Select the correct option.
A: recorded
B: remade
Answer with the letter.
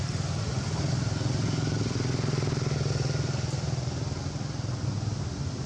A